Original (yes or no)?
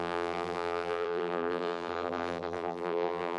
no